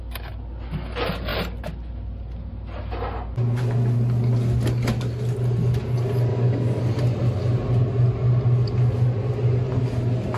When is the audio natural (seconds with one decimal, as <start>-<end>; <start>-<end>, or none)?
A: 0.0-6.3; 6.8-10.4